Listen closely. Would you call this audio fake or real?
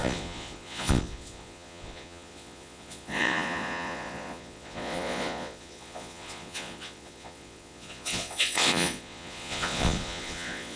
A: fake